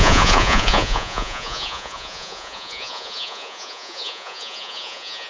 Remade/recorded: remade